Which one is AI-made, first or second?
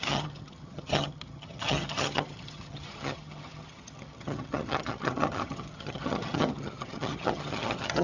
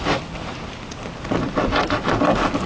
first